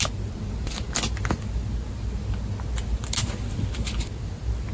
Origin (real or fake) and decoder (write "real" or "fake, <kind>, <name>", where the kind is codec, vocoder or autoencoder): real